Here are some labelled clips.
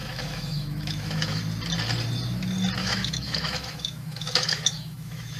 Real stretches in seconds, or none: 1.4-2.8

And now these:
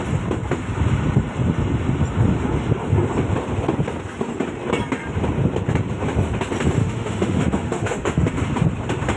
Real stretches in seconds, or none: 0.0-6.8; 8.3-9.2